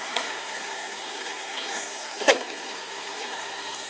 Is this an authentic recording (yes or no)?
no